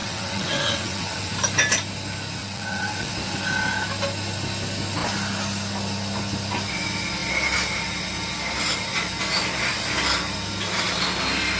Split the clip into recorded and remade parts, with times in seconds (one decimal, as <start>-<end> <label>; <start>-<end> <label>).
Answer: 0.0-1.3 remade; 1.3-2.4 recorded; 2.4-3.1 remade; 3.1-11.6 recorded